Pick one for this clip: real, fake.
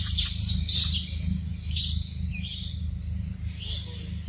real